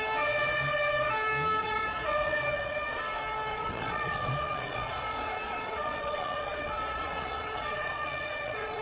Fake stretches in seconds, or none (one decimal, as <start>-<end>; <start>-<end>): 1.6-3.0; 3.5-8.8